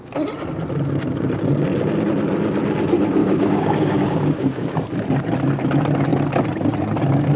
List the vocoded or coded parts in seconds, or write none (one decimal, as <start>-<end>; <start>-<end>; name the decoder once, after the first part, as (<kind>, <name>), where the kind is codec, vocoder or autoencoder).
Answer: 3.2-4.8 (codec, DAC)